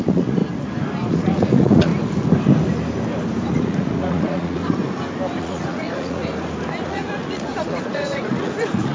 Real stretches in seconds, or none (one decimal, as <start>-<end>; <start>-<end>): 0.4-1.1; 1.9-3.5; 4.6-5.4; 6.2-6.8